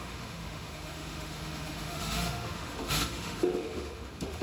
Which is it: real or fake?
fake